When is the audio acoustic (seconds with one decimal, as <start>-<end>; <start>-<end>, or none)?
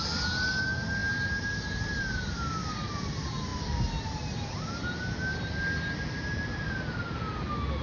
0.0-7.8